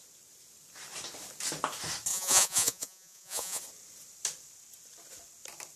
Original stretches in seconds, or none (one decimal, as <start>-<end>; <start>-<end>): 0.0-2.1; 3.6-5.8